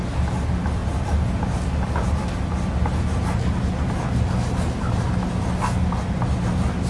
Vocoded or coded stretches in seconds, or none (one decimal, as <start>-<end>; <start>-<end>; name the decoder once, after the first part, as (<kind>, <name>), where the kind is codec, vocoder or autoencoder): none